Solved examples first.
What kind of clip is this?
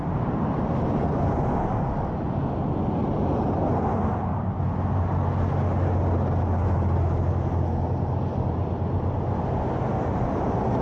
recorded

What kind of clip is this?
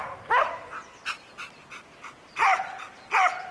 recorded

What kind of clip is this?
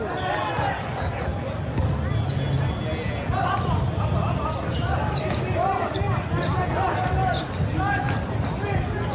recorded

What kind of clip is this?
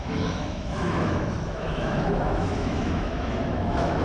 remade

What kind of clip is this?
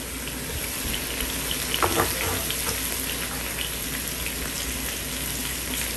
recorded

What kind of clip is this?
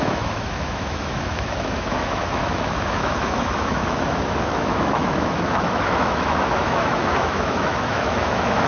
remade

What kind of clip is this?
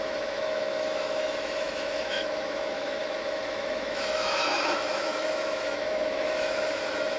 remade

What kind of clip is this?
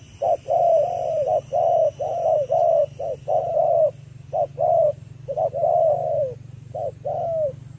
recorded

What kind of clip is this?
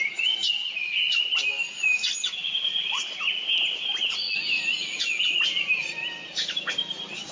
recorded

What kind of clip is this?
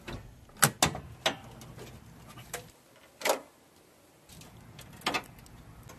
recorded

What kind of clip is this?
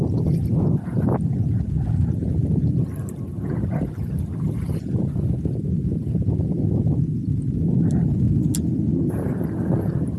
recorded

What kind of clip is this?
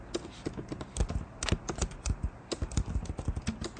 recorded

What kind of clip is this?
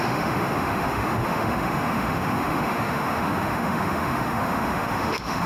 remade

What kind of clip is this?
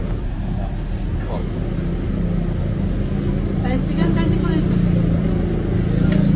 recorded